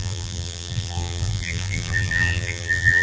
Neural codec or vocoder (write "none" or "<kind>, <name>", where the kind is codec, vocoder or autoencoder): vocoder, BigVGAN v2